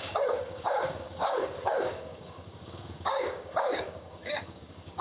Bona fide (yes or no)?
no